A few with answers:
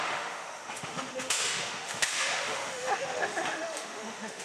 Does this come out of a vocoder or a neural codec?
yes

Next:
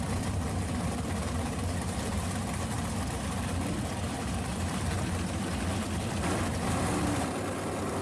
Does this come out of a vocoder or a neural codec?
yes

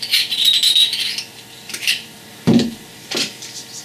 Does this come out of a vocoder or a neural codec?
yes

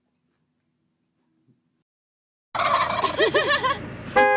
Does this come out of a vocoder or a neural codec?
no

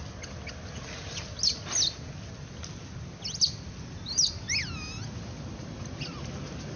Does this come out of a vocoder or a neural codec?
no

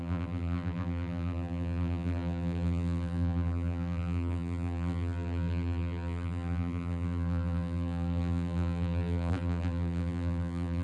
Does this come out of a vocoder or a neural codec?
yes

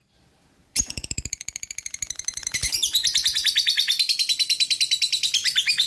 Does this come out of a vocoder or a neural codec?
no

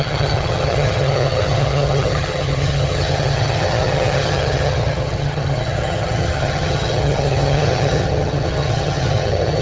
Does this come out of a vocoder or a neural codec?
yes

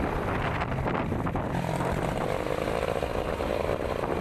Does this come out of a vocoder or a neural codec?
no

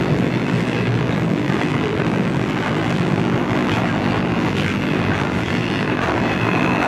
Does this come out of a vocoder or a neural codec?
yes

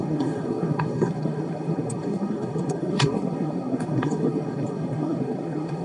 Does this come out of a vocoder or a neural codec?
yes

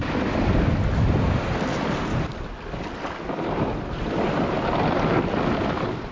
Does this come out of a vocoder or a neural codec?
no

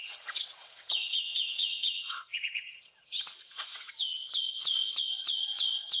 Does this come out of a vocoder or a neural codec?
yes